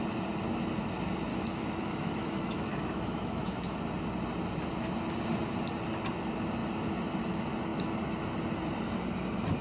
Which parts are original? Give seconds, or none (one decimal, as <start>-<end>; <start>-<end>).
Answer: 0.0-1.3; 3.8-9.6